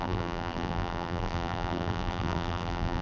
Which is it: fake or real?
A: fake